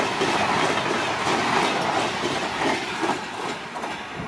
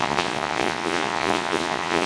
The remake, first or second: second